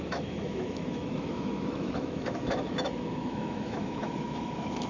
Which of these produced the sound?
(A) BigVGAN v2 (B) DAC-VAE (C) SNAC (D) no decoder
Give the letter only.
B